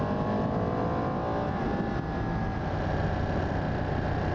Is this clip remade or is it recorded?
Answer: recorded